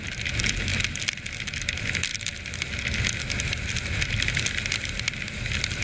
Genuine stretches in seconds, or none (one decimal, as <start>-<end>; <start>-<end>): 0.0-5.8